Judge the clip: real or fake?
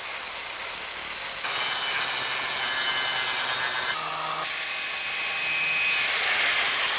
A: real